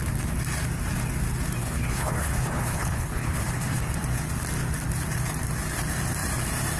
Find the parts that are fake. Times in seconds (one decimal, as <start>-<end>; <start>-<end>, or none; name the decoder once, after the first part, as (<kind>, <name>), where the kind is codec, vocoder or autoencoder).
1.6-3.8 (codec, HILCodec)